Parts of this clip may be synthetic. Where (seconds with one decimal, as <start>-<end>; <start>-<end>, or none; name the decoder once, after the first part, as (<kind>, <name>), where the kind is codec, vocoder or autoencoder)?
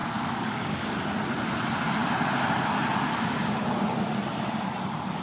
0.0-0.9 (codec, DAC)